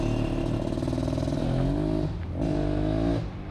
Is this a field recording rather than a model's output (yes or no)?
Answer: yes